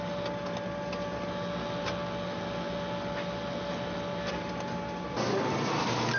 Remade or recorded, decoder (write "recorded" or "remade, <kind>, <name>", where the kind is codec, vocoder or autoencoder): recorded